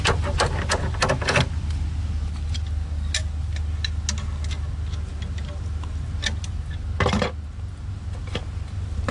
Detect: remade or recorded recorded